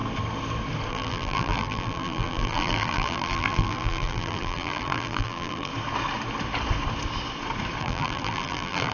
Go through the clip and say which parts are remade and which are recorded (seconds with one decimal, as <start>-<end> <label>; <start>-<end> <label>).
0.0-0.9 recorded; 0.9-5.7 remade; 5.7-7.8 recorded; 7.8-8.9 remade